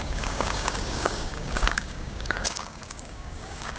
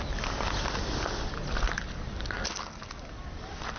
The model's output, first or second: first